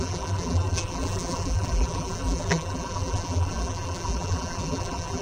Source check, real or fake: fake